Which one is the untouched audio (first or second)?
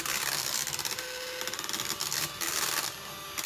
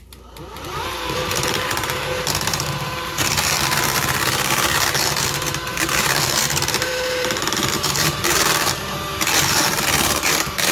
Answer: first